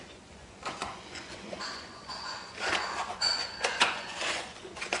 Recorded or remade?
remade